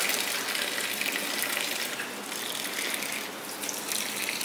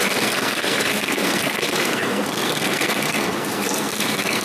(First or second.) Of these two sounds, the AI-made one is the second